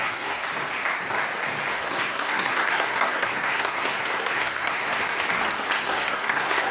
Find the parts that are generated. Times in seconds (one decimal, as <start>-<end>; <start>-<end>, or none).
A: 0.0-0.4; 1.7-5.0; 5.8-6.7